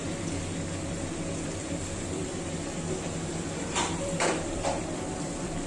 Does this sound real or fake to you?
fake